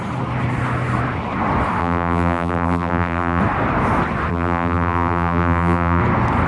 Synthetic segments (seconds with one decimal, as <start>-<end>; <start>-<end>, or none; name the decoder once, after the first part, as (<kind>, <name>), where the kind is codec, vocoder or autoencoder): 1.8-3.4 (vocoder, BigVGAN v2); 4.3-6.0